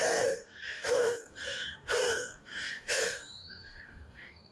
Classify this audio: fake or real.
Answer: fake